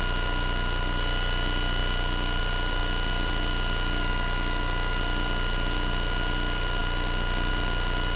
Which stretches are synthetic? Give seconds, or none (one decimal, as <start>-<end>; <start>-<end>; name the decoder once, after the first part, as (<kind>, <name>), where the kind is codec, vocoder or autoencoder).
none